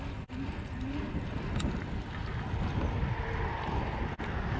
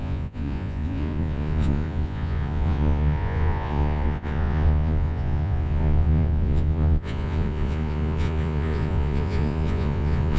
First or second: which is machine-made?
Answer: second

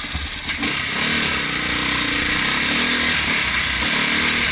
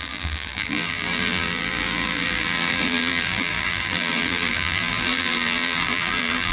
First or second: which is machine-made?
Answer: second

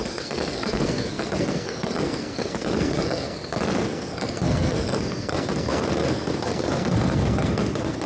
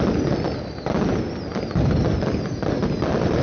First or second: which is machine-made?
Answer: first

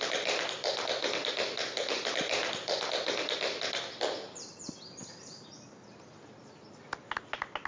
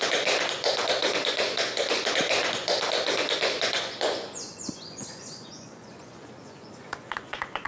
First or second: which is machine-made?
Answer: second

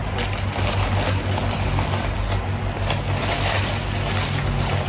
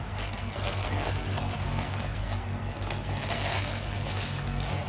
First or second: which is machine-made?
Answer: second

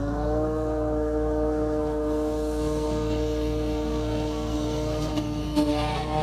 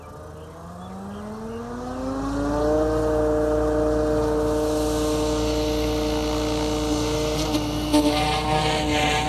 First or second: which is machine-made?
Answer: first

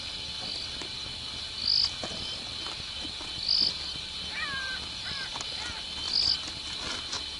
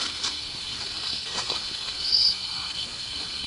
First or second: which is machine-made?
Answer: second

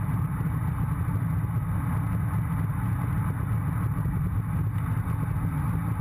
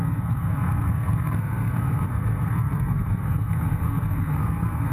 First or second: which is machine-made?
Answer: second